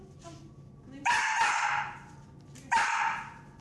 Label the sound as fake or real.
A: real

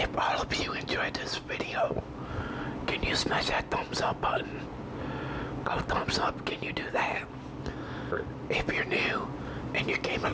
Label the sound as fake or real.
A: real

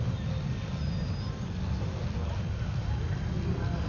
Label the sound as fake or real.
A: real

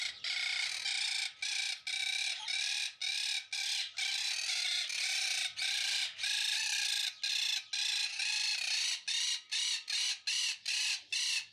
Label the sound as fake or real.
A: real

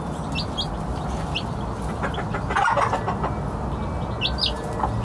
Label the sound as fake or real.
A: real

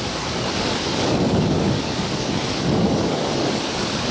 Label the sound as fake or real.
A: fake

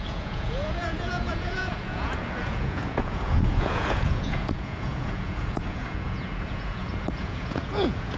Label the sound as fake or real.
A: fake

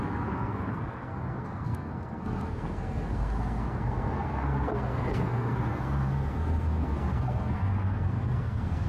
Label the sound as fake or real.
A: fake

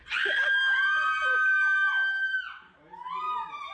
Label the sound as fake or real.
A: real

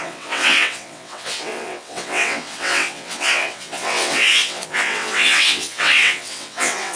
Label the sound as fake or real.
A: fake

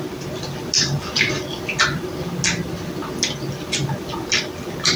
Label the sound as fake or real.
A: real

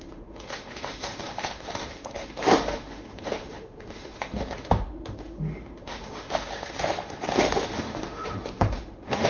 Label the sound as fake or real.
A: fake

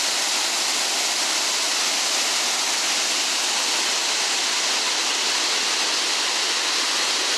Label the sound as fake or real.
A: real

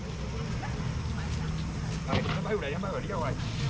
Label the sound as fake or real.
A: real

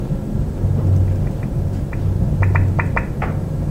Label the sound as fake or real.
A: real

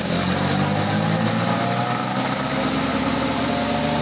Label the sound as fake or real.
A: real